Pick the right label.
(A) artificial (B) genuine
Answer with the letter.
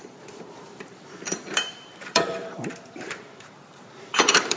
A